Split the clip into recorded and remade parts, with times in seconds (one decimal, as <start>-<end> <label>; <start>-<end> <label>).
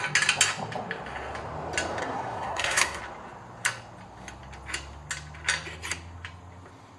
0.0-2.0 recorded; 2.0-3.0 remade; 3.0-7.0 recorded